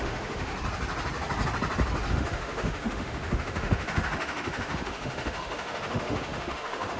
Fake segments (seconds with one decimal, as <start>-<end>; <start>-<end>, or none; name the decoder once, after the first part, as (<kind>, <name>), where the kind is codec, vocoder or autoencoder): 0.0-0.5 (autoencoder, DAC-VAE); 2.1-7.0